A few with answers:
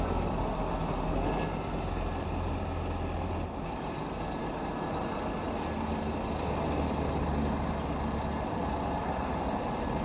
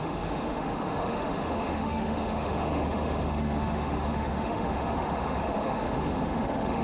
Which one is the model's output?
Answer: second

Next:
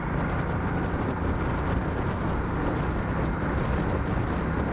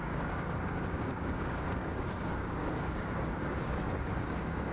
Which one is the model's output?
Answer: second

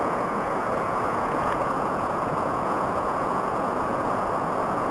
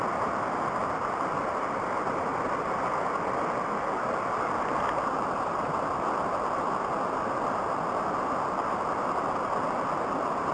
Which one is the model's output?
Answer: first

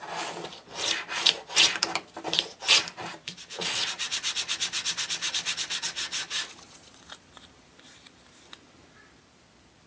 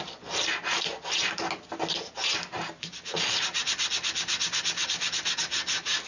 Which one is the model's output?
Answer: first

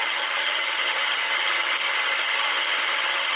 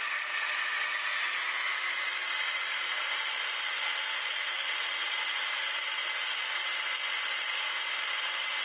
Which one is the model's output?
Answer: first